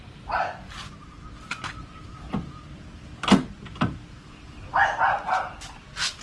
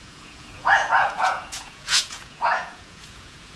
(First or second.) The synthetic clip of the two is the second